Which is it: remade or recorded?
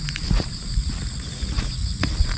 remade